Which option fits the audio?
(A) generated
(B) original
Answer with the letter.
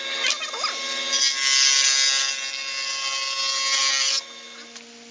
B